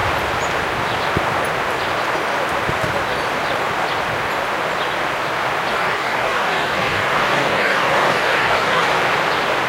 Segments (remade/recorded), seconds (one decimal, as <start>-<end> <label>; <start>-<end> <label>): 0.0-5.7 recorded; 5.7-9.0 remade; 9.0-9.7 recorded